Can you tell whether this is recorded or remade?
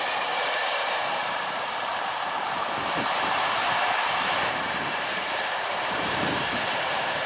remade